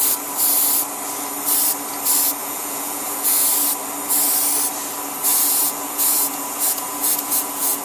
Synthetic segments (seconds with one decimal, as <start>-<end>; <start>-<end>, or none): 2.4-3.5; 5.3-7.8